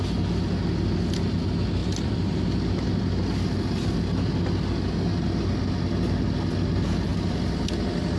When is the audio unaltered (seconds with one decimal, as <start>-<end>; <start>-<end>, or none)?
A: 0.0-1.8; 3.2-7.1